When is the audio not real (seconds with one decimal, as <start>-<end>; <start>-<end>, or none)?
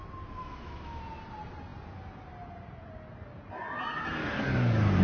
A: 0.4-1.0